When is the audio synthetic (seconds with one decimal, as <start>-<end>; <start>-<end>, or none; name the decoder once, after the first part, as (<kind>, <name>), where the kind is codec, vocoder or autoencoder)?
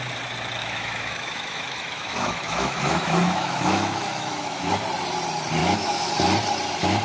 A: 0.6-4.7 (autoencoder, DAC-VAE); 5.6-6.1